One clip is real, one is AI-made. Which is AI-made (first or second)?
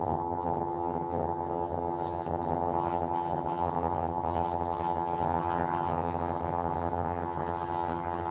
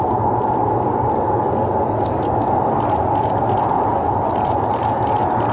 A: first